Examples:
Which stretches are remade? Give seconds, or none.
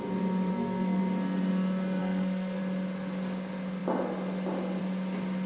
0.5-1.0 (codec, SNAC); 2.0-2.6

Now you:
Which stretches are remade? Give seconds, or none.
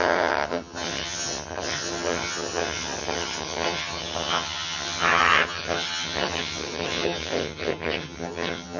0.0-8.8 (vocoder, HiFi-GAN)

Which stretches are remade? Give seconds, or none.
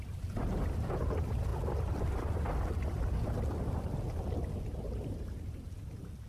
none